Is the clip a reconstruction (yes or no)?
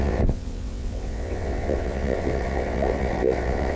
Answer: yes